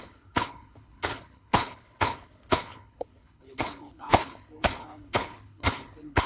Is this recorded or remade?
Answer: remade